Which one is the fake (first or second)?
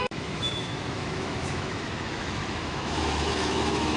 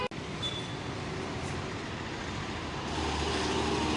first